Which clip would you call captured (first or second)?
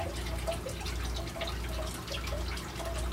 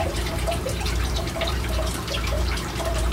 first